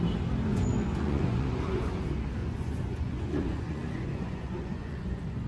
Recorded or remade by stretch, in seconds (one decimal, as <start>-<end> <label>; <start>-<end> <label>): 0.0-0.5 recorded; 0.5-2.0 remade; 2.0-2.4 recorded; 2.4-5.5 remade